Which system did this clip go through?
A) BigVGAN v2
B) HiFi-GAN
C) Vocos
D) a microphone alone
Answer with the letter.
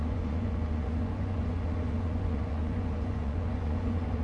C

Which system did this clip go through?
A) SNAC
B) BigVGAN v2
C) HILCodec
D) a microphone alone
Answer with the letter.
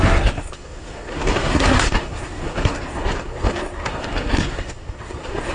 A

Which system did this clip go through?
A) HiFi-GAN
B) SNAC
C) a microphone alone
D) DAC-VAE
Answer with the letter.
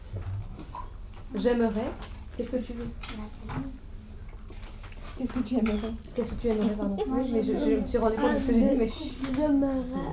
C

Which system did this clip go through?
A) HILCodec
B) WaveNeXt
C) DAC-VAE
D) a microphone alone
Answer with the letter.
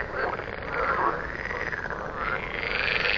D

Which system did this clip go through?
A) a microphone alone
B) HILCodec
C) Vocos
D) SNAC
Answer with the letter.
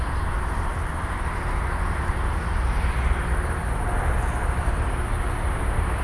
A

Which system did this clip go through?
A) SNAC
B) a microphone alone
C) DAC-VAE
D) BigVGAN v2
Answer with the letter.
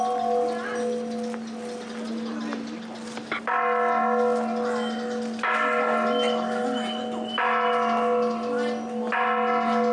B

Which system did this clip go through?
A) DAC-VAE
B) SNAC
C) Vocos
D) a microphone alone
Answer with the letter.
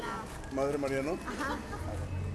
D